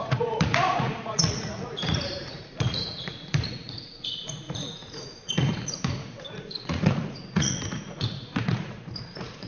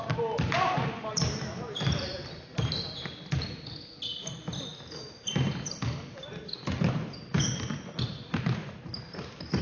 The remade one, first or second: first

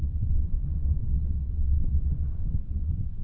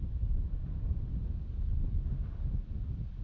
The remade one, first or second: first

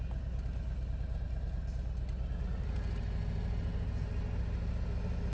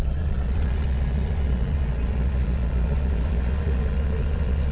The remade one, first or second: second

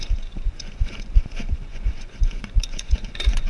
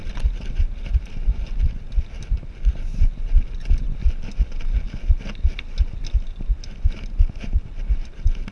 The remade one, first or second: first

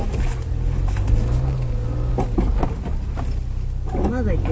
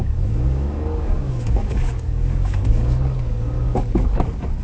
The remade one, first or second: second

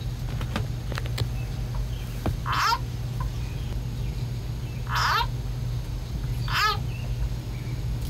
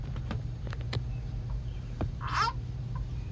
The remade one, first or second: second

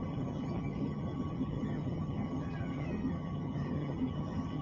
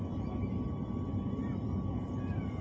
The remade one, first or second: first